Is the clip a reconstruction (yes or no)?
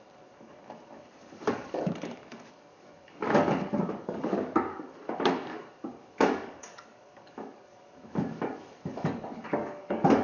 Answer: yes